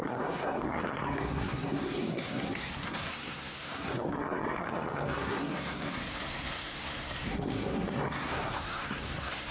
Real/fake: fake